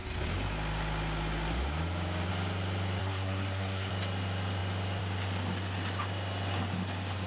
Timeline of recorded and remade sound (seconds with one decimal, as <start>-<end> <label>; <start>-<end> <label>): 0.0-3.0 recorded; 3.0-3.9 remade; 3.9-7.3 recorded